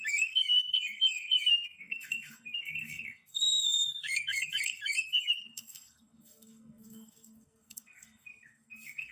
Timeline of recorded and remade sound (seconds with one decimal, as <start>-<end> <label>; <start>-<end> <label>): 0.0-9.1 remade